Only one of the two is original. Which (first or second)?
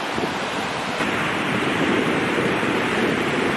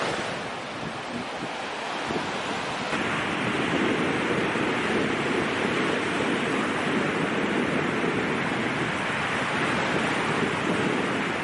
second